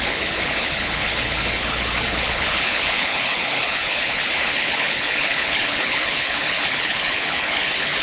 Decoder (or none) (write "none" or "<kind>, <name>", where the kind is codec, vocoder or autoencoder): codec, HILCodec